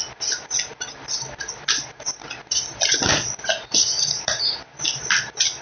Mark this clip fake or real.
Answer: real